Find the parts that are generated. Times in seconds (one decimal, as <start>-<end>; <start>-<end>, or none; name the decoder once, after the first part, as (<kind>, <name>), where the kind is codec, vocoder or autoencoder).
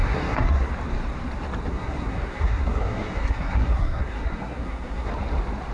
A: 0.0-0.7 (codec, SNAC); 1.7-5.1